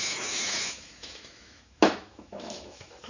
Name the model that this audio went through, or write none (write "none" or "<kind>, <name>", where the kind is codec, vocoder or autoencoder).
autoencoder, DAC-VAE